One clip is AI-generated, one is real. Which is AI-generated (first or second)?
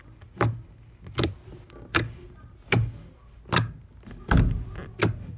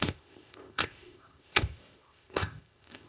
second